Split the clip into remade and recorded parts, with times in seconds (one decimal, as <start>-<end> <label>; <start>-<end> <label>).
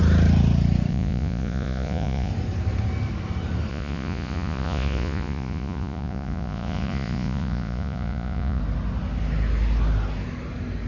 0.0-0.9 recorded; 0.9-2.3 remade; 2.3-3.7 recorded; 3.7-8.6 remade; 8.6-10.9 recorded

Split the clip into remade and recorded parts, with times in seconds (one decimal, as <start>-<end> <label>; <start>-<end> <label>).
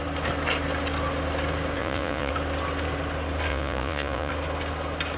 0.0-1.8 recorded; 1.8-2.3 remade; 2.3-3.5 recorded; 3.5-4.3 remade; 4.3-5.2 recorded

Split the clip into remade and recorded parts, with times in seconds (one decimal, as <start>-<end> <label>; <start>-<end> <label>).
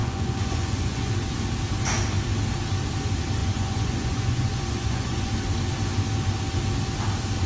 0.0-1.1 remade; 1.1-3.4 recorded; 3.4-5.3 remade; 5.3-7.5 recorded